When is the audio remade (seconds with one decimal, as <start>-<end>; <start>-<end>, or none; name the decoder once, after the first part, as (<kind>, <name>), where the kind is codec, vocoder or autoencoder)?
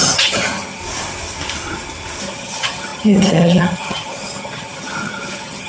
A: 0.0-0.8 (vocoder, HiFi-GAN); 2.2-5.7